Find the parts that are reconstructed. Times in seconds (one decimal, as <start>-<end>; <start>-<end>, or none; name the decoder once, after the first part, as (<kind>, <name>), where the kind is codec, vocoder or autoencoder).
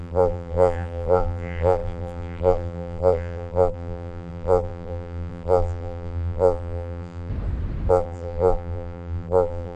0.0-7.3 (vocoder, BigVGAN v2); 7.9-9.8